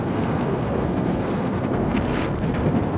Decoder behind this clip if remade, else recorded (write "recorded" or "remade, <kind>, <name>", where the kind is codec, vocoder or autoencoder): remade, codec, SNAC